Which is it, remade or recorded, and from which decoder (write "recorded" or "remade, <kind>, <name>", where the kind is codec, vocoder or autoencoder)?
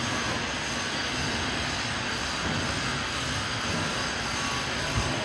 recorded